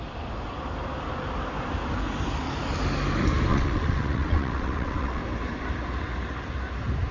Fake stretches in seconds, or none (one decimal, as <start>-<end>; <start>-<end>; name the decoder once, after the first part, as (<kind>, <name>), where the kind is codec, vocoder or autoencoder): 3.5-5.2 (vocoder, WaveNeXt)